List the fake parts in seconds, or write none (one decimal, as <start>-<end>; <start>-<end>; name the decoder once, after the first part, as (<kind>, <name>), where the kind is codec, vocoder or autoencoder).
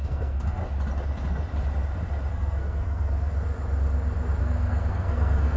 0.0-0.6 (codec, SNAC); 2.3-3.3; 4.4-5.6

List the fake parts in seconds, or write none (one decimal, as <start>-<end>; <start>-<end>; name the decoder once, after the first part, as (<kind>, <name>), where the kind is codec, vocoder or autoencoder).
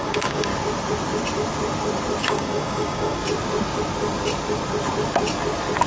0.0-0.5 (codec, DAC); 2.2-3.2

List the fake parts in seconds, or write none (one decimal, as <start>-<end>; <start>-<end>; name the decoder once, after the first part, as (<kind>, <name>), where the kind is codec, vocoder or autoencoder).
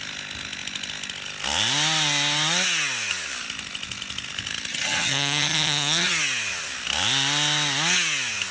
4.7-6.2 (vocoder, HiFi-GAN)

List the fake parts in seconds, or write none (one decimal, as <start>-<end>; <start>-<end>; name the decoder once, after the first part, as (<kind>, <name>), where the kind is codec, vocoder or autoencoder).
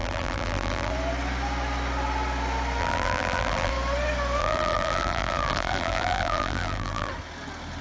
0.0-0.9 (vocoder, BigVGAN v2); 2.8-3.7; 4.4-7.1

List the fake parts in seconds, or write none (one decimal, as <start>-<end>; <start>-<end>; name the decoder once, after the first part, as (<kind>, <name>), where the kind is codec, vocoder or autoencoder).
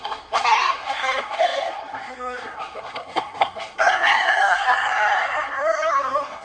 0.0-6.4 (codec, SNAC)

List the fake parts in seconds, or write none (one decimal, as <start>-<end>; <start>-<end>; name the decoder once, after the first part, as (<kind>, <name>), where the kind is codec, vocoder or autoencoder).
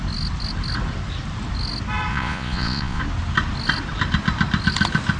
2.1-3.0 (vocoder, Vocos)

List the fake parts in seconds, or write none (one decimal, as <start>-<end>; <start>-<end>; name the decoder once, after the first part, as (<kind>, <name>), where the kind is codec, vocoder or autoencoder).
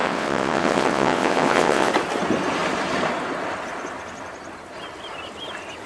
0.0-1.9 (vocoder, WaveNeXt)